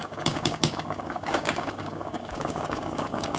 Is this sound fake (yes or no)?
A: yes